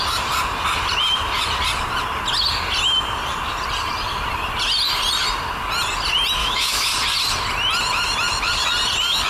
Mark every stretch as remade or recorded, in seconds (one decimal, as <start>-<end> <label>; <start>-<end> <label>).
0.0-6.4 recorded; 6.4-6.9 remade; 6.9-9.3 recorded